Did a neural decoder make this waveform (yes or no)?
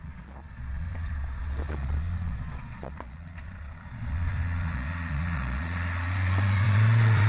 yes